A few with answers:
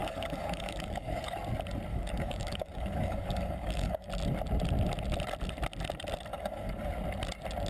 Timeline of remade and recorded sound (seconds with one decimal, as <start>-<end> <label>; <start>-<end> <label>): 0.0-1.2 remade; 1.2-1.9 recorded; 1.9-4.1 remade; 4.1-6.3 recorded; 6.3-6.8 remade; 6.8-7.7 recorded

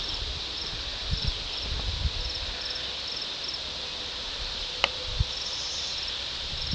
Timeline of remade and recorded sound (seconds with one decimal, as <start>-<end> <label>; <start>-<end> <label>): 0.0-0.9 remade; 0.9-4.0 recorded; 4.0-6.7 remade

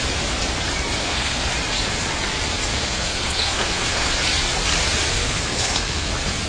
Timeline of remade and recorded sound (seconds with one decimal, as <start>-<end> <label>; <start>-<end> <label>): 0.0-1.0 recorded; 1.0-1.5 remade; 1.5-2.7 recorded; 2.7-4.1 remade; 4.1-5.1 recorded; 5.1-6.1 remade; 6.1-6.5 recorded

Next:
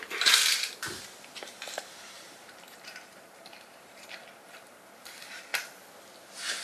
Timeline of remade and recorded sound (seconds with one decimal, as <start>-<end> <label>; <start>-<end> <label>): 0.0-5.5 remade; 5.5-6.6 recorded